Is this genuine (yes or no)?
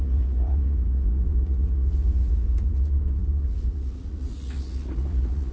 no